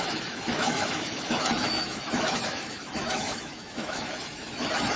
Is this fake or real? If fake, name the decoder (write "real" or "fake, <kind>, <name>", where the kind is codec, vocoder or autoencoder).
fake, autoencoder, DAC-VAE